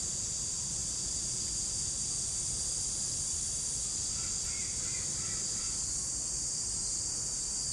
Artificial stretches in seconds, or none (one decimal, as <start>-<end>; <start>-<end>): none